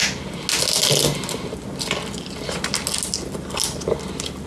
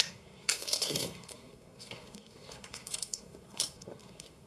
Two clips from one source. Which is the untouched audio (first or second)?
first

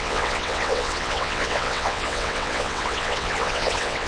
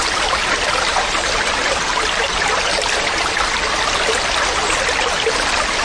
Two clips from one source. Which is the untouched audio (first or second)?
second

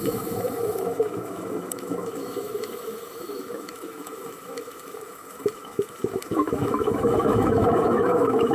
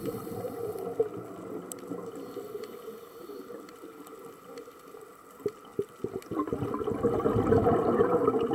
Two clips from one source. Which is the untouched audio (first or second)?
second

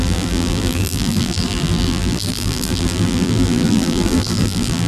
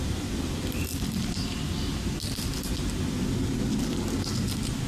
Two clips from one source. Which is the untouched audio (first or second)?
second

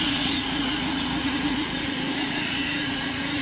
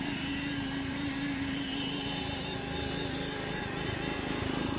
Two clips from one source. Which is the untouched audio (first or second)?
second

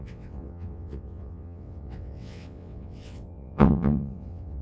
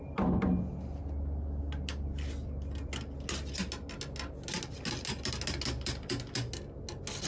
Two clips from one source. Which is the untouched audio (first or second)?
second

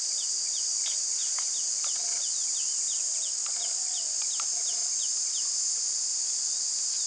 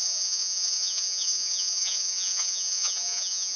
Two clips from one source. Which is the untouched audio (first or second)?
first